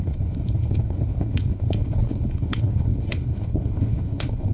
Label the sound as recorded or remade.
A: remade